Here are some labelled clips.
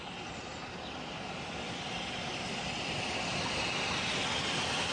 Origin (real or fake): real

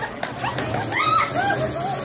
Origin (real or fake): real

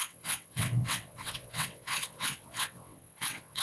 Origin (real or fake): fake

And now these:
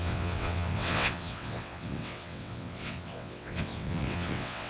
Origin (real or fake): fake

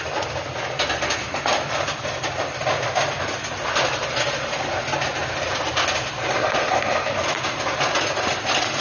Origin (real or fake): real